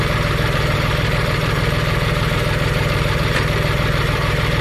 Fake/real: fake